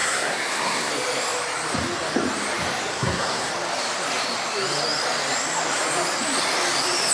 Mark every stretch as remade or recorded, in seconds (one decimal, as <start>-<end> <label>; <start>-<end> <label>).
0.0-0.9 remade; 0.9-2.9 recorded; 2.9-3.5 remade; 3.5-7.1 recorded